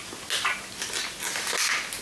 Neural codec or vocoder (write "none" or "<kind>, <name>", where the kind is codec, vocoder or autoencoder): none